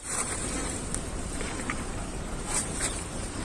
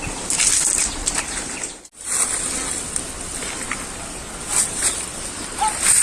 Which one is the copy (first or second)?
first